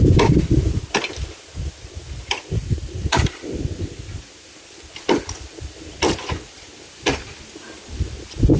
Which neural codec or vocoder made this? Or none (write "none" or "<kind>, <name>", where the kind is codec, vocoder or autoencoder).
vocoder, BigVGAN v2